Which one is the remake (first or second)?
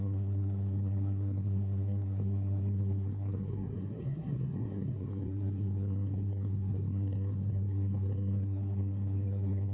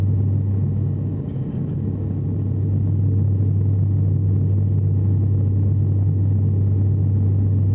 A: first